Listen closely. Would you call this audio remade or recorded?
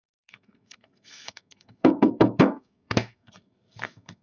remade